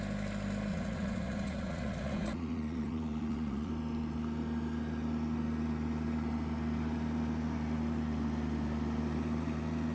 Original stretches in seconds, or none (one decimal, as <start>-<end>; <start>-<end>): 0.0-0.7; 3.7-9.9